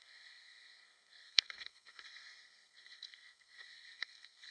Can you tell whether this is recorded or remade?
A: remade